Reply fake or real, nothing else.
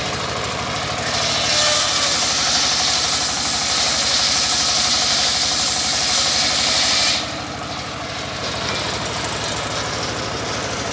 real